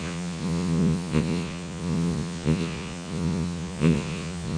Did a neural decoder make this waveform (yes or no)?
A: yes